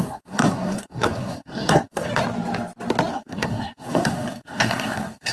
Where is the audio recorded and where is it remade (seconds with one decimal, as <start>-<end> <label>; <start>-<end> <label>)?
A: 0.0-2.1 remade; 2.1-3.1 recorded; 3.1-5.3 remade